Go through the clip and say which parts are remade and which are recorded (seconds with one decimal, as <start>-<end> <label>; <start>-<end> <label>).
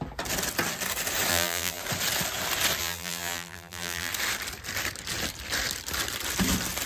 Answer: 0.0-1.3 recorded; 1.3-1.8 remade; 1.8-2.8 recorded; 2.8-4.1 remade; 4.1-6.9 recorded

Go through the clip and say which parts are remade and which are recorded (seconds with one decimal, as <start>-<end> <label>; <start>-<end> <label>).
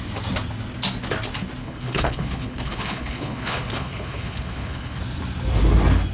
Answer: 0.0-1.6 recorded; 1.6-5.0 remade; 5.0-6.1 recorded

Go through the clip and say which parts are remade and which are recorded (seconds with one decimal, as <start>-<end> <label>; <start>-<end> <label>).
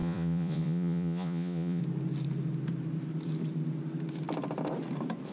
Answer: 0.0-1.8 remade; 1.8-5.3 recorded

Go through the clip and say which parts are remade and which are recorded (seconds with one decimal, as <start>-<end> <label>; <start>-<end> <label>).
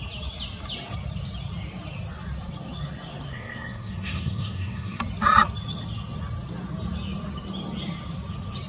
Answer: 0.0-3.3 recorded; 3.3-5.0 remade; 5.0-8.7 recorded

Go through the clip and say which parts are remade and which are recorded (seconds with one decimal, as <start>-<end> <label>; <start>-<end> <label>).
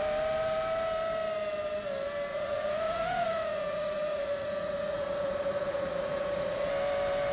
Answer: 0.0-2.3 recorded; 2.3-6.7 remade; 6.7-7.3 recorded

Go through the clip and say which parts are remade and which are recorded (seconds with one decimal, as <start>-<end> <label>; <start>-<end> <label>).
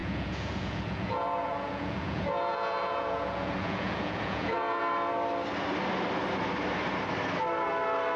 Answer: 0.0-4.8 remade; 4.8-8.2 recorded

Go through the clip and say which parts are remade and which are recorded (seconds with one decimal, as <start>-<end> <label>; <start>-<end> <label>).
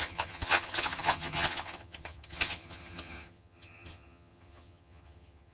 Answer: 0.0-5.5 remade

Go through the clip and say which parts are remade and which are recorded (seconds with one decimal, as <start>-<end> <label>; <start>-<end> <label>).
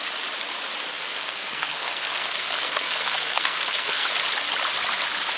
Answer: 0.0-0.9 recorded; 0.9-4.1 remade; 4.1-5.4 recorded